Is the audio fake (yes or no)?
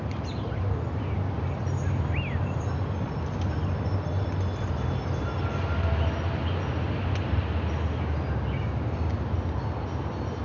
no